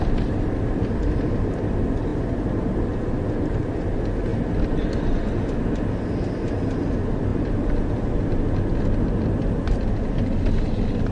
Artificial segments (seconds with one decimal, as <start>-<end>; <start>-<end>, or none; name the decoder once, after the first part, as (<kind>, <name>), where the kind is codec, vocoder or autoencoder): none